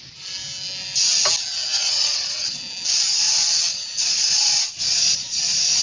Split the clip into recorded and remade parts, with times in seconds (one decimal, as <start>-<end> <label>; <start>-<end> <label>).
0.0-1.7 recorded; 1.7-2.6 remade; 2.6-3.7 recorded; 3.7-5.8 remade